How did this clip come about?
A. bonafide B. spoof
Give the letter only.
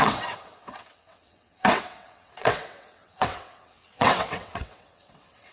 B